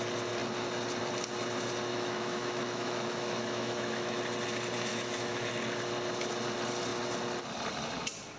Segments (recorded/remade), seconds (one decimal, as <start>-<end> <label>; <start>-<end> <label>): 0.0-1.9 recorded; 1.9-4.2 remade; 4.2-4.9 recorded; 4.9-5.5 remade; 5.5-8.4 recorded

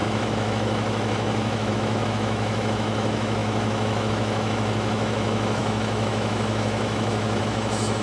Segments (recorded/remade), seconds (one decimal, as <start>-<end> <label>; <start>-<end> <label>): 0.0-8.0 remade

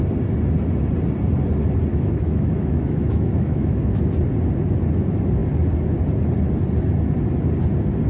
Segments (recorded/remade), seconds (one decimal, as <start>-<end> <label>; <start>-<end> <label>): 0.0-1.9 recorded; 1.9-4.0 remade; 4.0-8.1 recorded

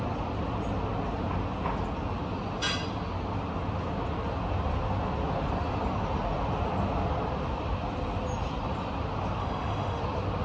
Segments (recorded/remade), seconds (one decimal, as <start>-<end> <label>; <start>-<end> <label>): 0.0-9.4 recorded; 9.4-10.0 remade; 10.0-10.4 recorded

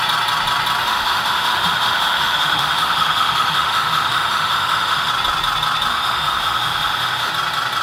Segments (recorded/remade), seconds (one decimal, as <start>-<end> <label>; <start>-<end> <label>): 0.0-0.8 recorded; 0.8-5.1 remade; 5.1-5.9 recorded; 5.9-7.3 remade; 7.3-7.8 recorded